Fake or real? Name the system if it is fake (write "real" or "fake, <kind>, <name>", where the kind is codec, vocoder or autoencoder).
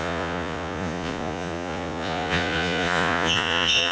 fake, vocoder, Vocos